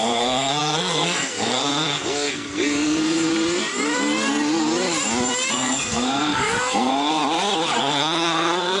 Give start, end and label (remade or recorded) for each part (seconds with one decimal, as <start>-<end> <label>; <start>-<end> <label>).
0.0-3.3 remade; 3.3-5.5 recorded; 5.5-7.2 remade; 7.2-7.8 recorded; 7.8-8.8 remade